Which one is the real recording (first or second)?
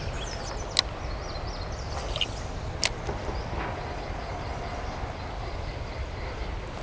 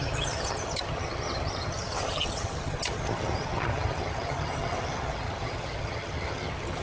first